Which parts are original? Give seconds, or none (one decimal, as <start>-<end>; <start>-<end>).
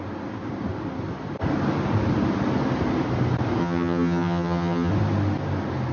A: 0.0-3.6; 4.9-5.9